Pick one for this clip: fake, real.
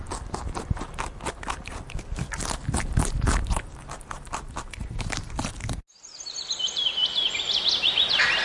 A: real